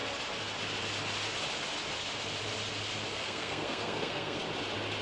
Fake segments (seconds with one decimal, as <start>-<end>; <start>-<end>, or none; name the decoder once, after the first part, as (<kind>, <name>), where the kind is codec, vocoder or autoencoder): 3.1-4.4 (codec, SNAC)